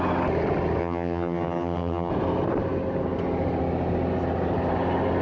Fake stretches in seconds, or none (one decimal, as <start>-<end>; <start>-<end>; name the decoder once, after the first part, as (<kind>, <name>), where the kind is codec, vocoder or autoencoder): 0.8-2.1 (vocoder, HiFi-GAN)

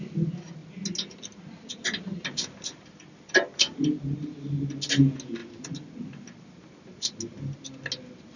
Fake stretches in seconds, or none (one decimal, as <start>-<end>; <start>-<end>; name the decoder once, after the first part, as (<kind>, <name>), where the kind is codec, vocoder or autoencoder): none

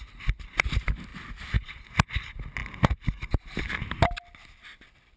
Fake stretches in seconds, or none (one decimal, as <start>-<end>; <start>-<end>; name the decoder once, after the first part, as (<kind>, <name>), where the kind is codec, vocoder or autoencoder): none

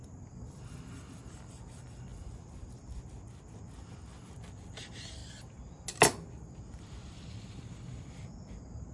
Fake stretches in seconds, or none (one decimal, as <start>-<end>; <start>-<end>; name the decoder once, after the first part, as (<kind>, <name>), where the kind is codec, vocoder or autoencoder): 0.0-2.1 (vocoder, BigVGAN v2); 4.5-5.2; 6.8-8.9

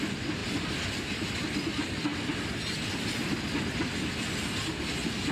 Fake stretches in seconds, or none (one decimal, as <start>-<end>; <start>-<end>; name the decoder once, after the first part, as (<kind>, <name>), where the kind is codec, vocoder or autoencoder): none

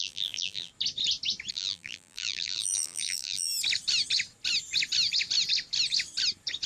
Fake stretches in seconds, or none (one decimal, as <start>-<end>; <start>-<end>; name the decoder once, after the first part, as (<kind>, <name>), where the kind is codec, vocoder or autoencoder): 0.0-0.7 (vocoder, BigVGAN v2); 1.5-3.5

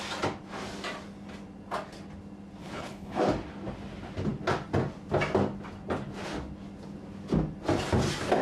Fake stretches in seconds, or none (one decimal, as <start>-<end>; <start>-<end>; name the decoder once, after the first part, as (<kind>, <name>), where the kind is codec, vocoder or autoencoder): 2.6-3.2 (codec, HILCodec)